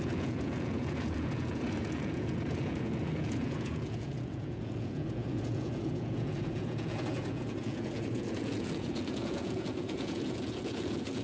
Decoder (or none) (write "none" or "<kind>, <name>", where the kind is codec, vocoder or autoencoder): vocoder, Vocos